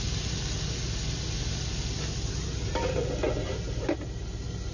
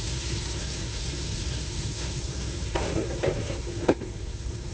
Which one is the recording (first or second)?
first